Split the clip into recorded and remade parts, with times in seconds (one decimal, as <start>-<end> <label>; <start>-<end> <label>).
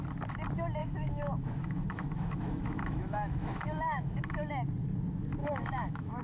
0.0-0.8 recorded; 0.8-4.5 remade; 4.5-5.4 recorded; 5.4-6.2 remade